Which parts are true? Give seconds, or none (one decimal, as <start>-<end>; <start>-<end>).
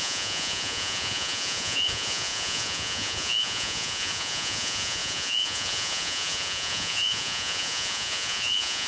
none